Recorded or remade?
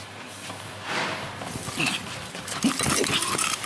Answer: recorded